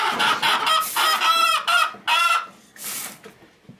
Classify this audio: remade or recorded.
recorded